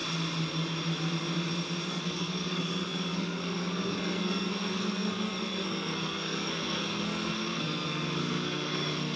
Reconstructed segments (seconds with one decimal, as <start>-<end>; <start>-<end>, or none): 1.9-9.2